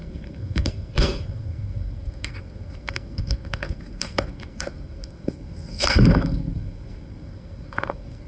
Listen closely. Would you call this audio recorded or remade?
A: remade